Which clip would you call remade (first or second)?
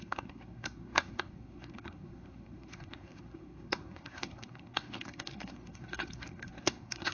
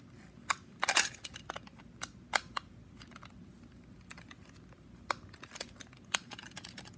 first